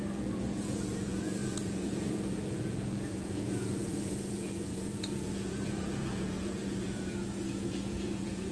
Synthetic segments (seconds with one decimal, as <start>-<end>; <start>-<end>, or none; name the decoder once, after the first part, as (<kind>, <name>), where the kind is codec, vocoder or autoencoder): 0.0-8.5 (vocoder, Vocos)